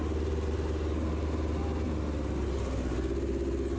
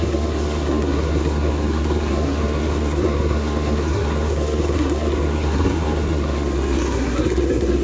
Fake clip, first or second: second